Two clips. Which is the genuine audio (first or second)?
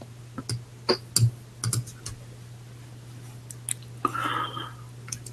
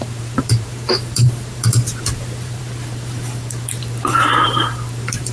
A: first